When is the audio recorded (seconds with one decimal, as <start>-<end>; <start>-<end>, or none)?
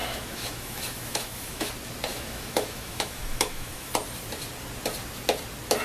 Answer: 1.7-2.1; 3.9-5.8